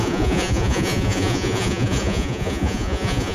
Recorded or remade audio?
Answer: remade